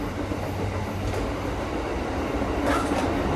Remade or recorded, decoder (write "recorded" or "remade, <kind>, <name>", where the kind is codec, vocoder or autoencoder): recorded